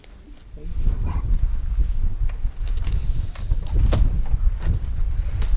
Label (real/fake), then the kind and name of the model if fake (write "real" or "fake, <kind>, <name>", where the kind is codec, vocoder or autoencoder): real